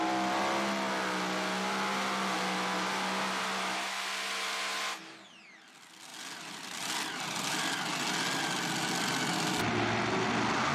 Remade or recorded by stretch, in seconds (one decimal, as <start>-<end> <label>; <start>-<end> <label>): 0.0-10.7 recorded